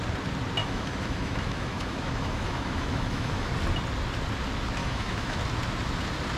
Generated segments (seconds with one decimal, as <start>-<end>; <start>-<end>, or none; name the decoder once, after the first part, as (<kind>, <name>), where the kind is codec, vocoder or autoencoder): 0.6-3.5 (autoencoder, DAC-VAE); 4.8-5.4